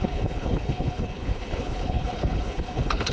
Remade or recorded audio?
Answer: remade